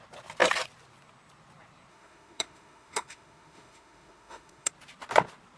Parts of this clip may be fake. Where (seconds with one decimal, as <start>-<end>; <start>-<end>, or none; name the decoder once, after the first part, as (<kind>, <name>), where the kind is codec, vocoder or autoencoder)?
1.9-4.7 (autoencoder, DAC-VAE)